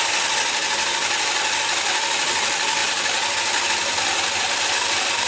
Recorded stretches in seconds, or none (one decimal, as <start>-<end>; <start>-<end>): 0.0-5.3